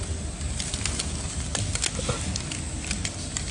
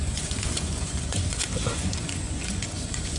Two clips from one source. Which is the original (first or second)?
first